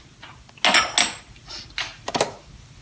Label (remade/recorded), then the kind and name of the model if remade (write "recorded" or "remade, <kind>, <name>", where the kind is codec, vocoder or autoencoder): recorded